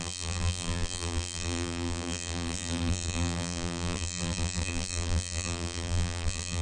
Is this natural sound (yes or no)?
no